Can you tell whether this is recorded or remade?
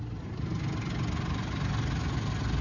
recorded